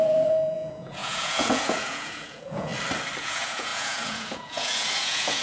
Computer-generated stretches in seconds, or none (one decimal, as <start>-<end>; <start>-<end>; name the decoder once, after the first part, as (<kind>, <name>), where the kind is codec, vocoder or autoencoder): 0.0-2.7 (vocoder, Vocos); 3.2-5.4

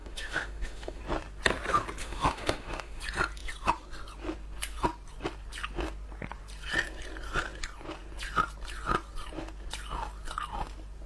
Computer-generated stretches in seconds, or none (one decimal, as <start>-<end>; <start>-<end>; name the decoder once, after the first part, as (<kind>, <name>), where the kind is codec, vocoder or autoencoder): 0.0-1.0 (autoencoder, DAC-VAE); 2.0-3.0

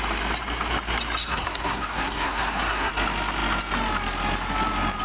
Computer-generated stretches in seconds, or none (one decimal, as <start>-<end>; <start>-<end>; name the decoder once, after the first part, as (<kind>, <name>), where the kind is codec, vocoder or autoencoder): 1.2-2.9 (codec, SNAC)

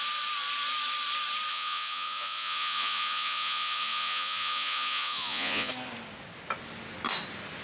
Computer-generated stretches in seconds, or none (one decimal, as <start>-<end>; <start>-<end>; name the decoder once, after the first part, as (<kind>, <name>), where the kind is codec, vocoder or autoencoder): 1.5-5.7 (vocoder, Vocos)

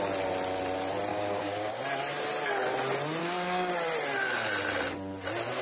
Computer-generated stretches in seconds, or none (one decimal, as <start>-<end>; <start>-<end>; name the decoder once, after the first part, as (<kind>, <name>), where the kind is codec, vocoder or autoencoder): 1.1-1.8 (codec, DAC); 3.2-3.7

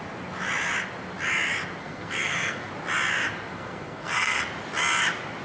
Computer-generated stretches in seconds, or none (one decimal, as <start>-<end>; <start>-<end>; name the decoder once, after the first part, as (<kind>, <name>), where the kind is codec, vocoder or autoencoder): 1.8-2.7 (codec, SNAC); 3.5-4.4